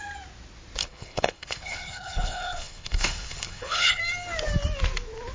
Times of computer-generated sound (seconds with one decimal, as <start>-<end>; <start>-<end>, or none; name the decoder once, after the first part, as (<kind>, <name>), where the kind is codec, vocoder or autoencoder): 0.8-4.0 (codec, HILCodec)